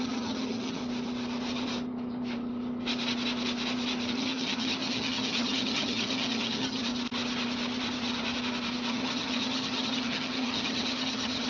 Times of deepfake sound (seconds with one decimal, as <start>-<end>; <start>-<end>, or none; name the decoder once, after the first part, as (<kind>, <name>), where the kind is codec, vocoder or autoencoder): 0.0-0.8 (vocoder, HiFi-GAN); 4.1-6.8; 8.9-11.5